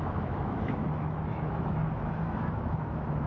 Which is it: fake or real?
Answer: fake